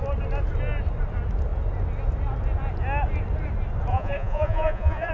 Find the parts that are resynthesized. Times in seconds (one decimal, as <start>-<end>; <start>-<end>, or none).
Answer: 3.9-5.1